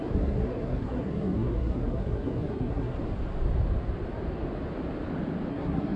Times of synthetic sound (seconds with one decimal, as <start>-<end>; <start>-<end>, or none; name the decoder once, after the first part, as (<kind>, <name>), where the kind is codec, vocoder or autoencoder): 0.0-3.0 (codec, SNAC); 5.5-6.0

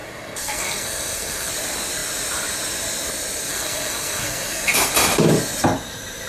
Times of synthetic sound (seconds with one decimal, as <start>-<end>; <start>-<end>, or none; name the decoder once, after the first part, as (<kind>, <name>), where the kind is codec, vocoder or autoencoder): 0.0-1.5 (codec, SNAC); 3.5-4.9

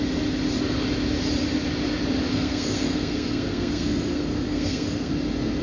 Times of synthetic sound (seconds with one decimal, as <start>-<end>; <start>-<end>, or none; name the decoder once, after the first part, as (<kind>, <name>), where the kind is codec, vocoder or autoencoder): 2.3-5.1 (codec, SNAC)

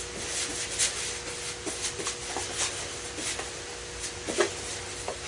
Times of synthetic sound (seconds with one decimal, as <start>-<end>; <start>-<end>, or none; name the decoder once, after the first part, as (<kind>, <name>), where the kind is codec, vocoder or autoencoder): none